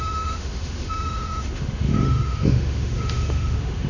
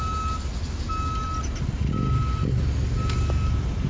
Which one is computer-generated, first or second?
first